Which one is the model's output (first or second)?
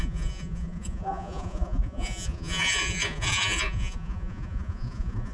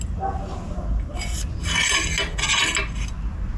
first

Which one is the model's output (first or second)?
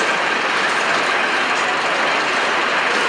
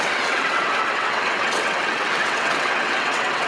second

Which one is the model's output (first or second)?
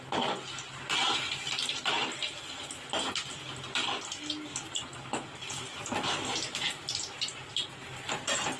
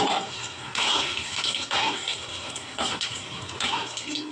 second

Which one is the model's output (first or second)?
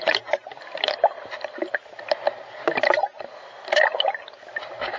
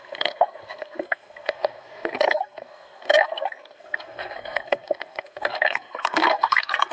second